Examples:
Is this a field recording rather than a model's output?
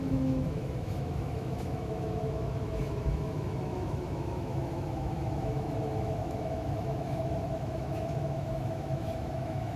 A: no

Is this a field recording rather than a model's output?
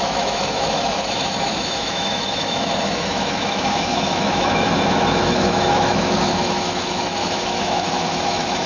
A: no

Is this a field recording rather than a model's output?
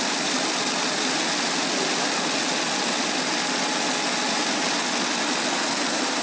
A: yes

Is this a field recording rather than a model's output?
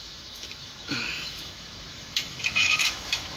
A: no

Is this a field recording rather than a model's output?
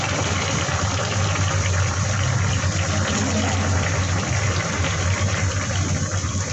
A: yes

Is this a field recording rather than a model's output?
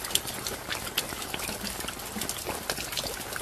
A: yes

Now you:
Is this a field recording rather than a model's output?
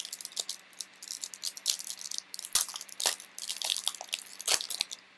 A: yes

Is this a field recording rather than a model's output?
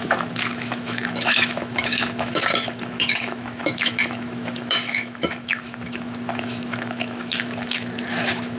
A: no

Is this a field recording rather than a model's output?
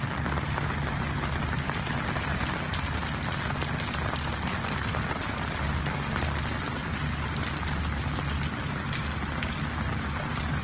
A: yes